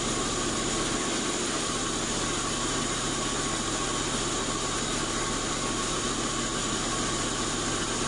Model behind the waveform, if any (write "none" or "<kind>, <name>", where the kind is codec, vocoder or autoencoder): none